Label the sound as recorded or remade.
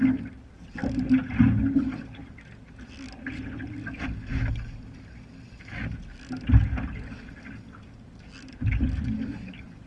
recorded